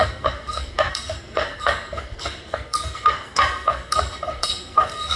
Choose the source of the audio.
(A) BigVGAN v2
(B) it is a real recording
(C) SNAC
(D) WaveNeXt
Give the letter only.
C